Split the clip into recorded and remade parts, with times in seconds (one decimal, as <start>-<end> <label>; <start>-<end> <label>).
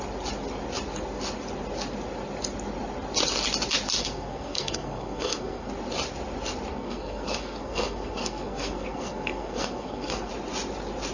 0.0-4.0 recorded; 4.0-5.7 remade; 5.7-6.7 recorded; 6.7-10.3 remade; 10.3-11.1 recorded